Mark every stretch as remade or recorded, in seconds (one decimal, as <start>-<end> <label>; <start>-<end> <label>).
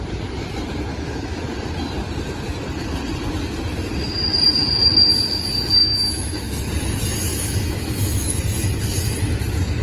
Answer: 0.0-0.9 recorded; 0.9-1.4 remade; 1.4-5.8 recorded; 5.8-6.7 remade; 6.7-7.3 recorded; 7.3-8.4 remade; 8.4-9.8 recorded